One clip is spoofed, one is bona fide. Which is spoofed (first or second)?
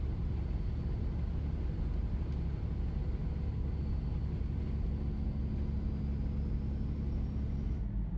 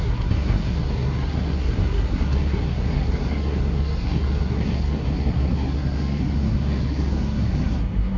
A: second